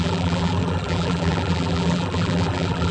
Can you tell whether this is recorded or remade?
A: remade